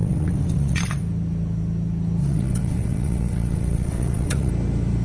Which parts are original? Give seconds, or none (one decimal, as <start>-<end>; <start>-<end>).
1.0-2.2; 4.5-5.0